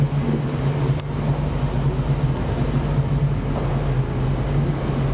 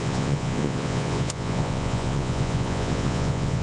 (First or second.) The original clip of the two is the first